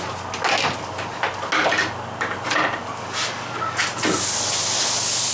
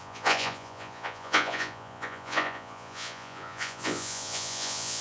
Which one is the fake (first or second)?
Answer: second